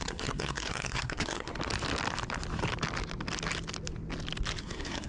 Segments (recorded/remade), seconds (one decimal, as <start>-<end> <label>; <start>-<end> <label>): 0.0-1.5 remade; 1.5-4.6 recorded; 4.6-5.1 remade